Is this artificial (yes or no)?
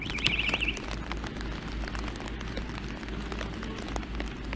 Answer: no